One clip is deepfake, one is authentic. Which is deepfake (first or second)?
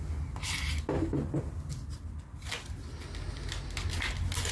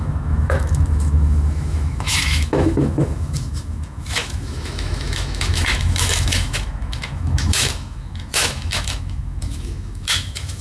second